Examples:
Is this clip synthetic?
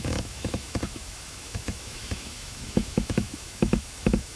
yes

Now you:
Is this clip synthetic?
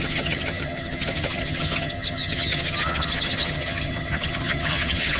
yes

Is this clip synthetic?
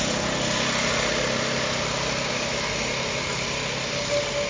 no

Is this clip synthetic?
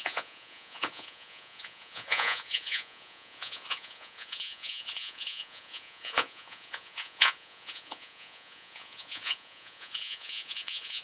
yes